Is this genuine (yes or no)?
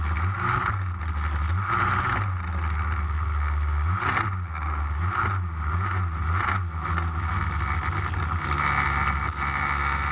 yes